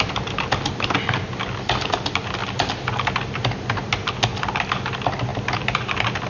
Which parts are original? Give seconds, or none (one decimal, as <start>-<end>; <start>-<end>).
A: 0.0-6.3